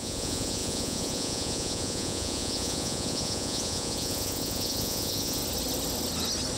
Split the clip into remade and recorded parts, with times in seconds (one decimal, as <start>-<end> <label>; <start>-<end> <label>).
0.0-5.4 remade; 5.4-6.6 recorded

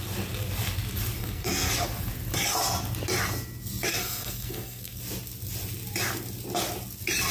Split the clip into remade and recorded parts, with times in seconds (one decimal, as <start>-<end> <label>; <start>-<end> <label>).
0.0-1.2 recorded; 1.2-1.7 remade; 1.7-3.9 recorded; 3.9-5.0 remade; 5.0-7.3 recorded